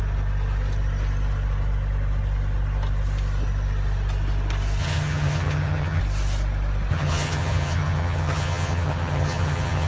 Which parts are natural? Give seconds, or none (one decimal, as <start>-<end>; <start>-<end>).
0.0-4.8; 6.0-6.9